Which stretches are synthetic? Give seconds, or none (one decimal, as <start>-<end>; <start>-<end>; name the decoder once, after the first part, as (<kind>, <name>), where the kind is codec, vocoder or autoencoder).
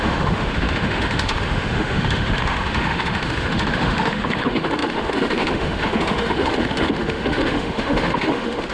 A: 0.0-8.7 (autoencoder, DAC-VAE)